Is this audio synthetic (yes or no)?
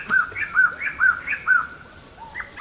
no